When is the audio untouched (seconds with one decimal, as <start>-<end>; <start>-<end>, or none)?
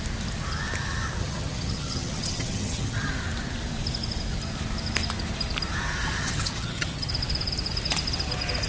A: 0.0-1.2; 3.1-6.2; 7.1-8.7